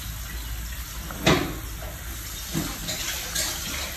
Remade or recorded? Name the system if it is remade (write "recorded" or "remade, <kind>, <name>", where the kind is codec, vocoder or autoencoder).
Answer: recorded